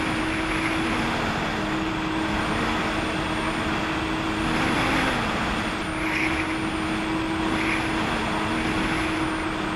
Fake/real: real